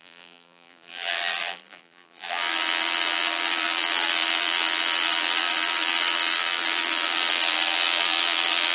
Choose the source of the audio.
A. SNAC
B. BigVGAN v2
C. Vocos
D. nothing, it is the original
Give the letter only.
B